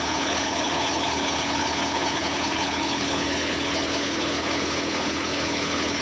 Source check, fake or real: fake